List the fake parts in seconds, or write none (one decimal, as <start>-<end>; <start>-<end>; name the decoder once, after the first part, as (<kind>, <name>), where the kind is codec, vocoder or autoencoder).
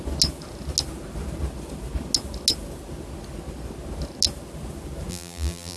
5.1-5.8 (vocoder, BigVGAN v2)